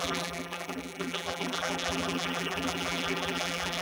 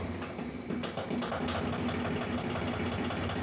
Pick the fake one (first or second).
first